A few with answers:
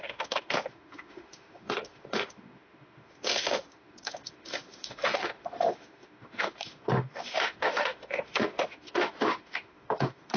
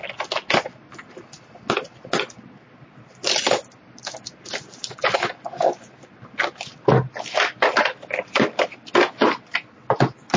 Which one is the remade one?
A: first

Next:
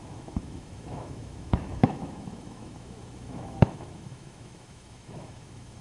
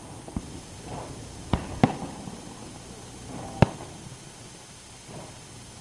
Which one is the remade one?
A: first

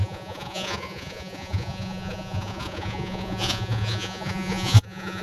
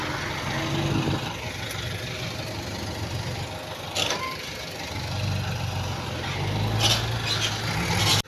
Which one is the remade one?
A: first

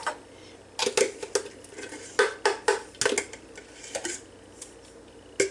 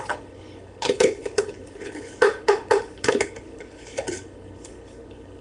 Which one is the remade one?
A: second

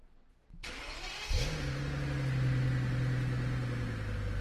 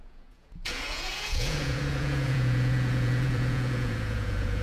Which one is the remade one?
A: second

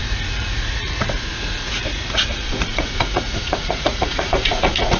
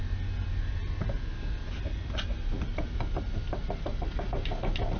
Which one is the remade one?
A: first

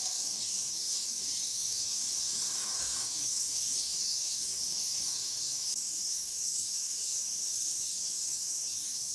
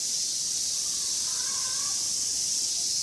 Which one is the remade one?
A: first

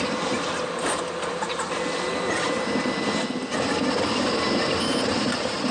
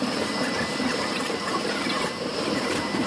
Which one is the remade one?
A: second